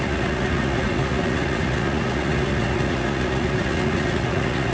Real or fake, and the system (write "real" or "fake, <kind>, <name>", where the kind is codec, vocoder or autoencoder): fake, vocoder, Vocos